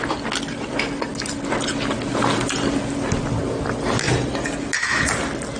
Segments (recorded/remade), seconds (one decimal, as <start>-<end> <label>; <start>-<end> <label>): 0.0-5.6 recorded

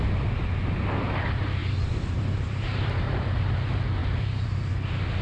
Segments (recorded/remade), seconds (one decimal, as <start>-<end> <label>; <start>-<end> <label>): 0.0-1.6 recorded; 1.6-3.2 remade; 3.2-4.0 recorded; 4.0-4.7 remade; 4.7-5.2 recorded